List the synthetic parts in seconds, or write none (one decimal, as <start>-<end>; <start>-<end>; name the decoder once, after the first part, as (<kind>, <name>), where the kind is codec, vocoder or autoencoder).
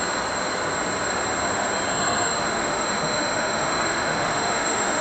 1.9-5.0 (autoencoder, DAC-VAE)